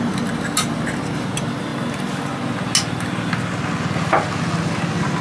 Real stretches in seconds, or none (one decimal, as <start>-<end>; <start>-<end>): 0.0-5.2